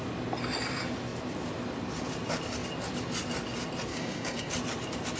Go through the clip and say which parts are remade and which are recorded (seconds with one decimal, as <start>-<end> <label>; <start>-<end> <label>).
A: 0.0-3.9 recorded; 3.9-4.5 remade; 4.5-5.2 recorded